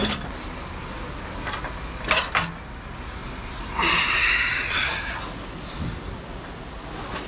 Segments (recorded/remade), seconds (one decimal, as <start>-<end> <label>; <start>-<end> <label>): 0.0-3.2 recorded; 3.2-4.1 remade; 4.1-7.3 recorded